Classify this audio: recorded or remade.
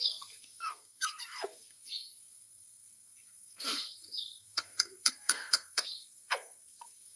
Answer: remade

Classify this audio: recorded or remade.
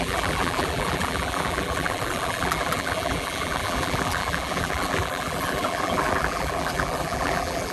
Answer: remade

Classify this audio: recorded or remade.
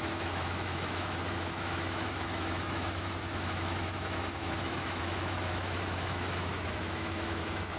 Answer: remade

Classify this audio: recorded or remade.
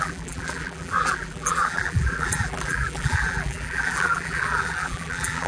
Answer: remade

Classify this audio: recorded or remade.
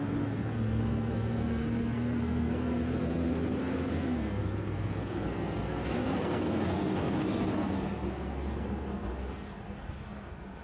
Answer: remade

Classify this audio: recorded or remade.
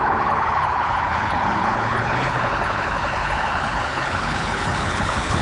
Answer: remade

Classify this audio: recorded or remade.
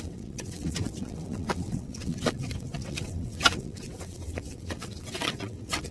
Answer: remade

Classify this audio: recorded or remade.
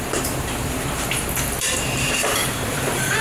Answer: remade